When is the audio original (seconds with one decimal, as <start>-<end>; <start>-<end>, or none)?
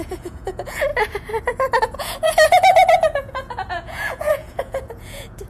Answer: 0.9-1.8